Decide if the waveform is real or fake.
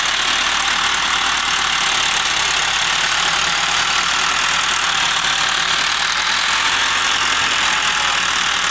real